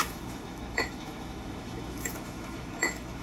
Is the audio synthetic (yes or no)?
yes